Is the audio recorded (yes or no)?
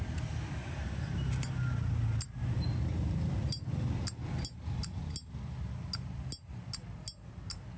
yes